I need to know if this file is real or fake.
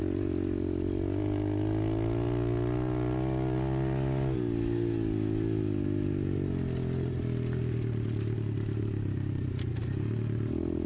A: real